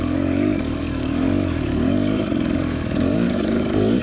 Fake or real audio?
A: fake